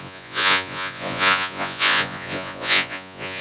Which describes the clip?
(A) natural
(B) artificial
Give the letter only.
B